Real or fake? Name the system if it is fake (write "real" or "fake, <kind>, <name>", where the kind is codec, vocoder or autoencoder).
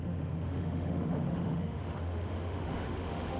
fake, autoencoder, DAC-VAE